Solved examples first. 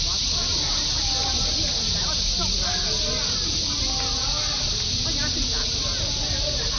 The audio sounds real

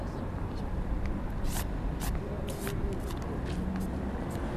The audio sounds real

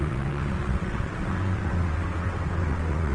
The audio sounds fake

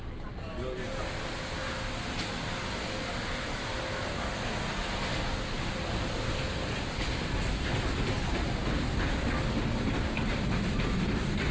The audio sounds real